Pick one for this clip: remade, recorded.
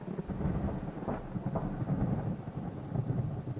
recorded